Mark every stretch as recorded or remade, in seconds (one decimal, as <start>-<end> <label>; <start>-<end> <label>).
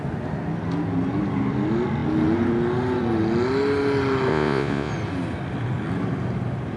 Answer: 0.0-4.3 recorded; 4.3-4.9 remade; 4.9-6.8 recorded